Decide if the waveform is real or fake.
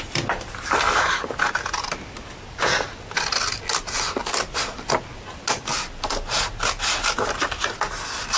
real